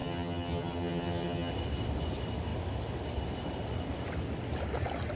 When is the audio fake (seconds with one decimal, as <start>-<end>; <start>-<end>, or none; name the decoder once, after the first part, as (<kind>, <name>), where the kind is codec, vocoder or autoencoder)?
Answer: 0.0-1.5 (vocoder, HiFi-GAN)